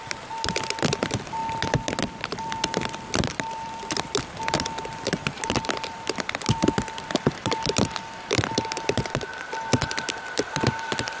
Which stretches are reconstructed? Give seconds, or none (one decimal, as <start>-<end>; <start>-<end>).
0.0-9.3; 10.1-11.2